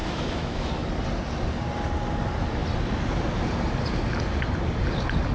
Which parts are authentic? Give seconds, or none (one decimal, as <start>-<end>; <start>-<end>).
0.7-5.3